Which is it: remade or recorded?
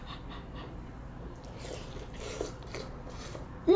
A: remade